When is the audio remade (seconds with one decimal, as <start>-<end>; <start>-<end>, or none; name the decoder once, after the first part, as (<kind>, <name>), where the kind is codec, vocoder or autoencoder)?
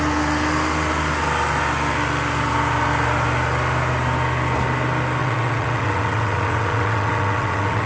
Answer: 5.2-7.9 (vocoder, WaveNeXt)